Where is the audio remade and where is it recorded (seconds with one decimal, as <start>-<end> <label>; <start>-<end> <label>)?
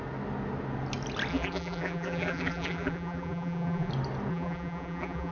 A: 0.0-1.3 recorded; 1.3-3.9 remade; 3.9-4.3 recorded; 4.3-5.3 remade